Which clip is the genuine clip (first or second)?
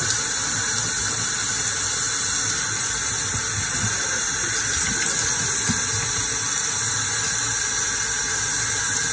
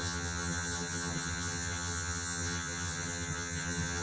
first